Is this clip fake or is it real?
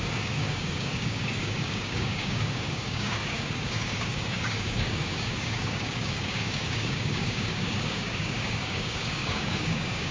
fake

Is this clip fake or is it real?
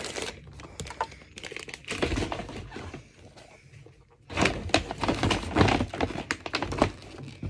real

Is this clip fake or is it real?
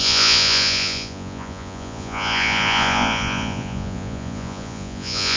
fake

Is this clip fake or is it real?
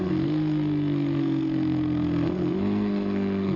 fake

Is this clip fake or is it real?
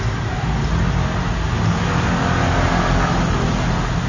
real